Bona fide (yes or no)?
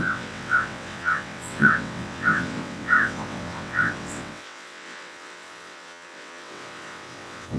no